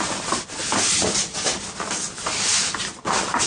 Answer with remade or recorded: recorded